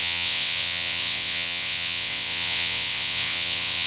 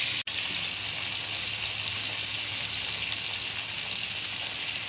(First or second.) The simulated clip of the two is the first